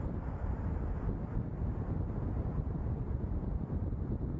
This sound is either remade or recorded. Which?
remade